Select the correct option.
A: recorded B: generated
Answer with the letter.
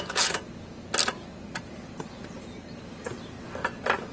A